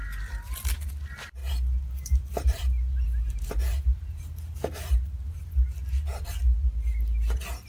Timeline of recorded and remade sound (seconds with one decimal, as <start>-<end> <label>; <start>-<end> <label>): 0.0-1.4 recorded; 1.4-5.3 remade; 5.3-7.7 recorded